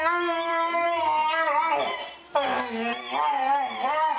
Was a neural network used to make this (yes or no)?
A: yes